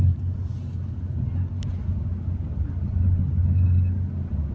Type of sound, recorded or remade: recorded